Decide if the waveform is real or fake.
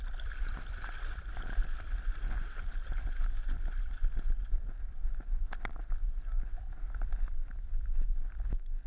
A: real